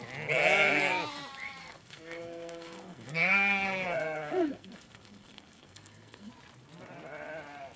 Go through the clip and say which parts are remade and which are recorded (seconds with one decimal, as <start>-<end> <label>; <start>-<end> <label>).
0.0-1.6 recorded; 1.6-6.3 remade; 6.3-7.8 recorded